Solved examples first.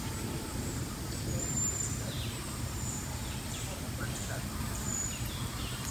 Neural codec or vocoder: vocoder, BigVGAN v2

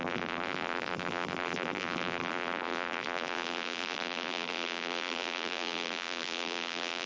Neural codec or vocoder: vocoder, BigVGAN v2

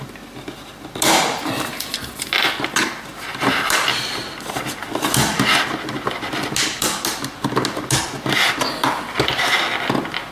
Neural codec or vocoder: none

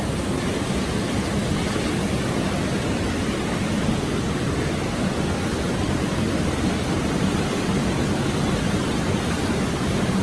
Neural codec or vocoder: none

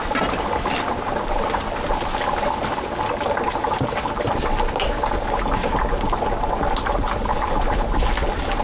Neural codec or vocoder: none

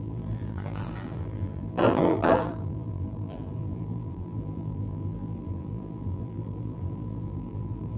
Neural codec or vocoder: vocoder, BigVGAN v2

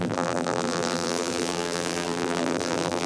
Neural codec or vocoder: vocoder, BigVGAN v2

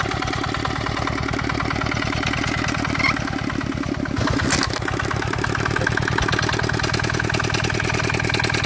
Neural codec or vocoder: none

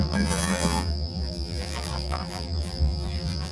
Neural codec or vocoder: vocoder, BigVGAN v2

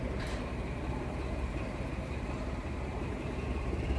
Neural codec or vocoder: vocoder, BigVGAN v2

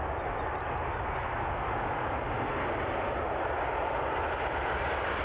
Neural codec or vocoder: none